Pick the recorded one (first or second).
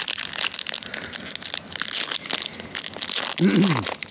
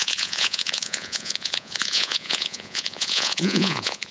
first